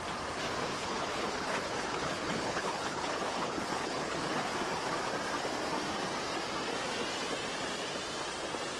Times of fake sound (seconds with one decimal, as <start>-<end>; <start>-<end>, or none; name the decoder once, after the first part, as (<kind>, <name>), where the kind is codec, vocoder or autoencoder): 0.7-4.5 (codec, HILCodec)